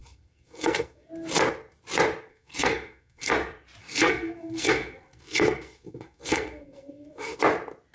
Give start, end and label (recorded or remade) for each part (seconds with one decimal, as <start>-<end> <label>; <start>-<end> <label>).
0.0-1.1 remade; 1.1-2.3 recorded; 2.3-3.3 remade; 3.3-3.8 recorded; 3.8-7.4 remade; 7.4-7.9 recorded